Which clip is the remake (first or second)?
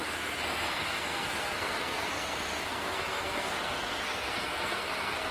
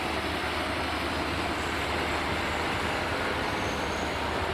first